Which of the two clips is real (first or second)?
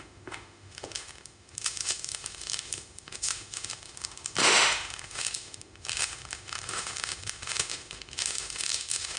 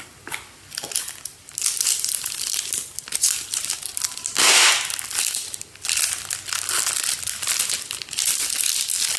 second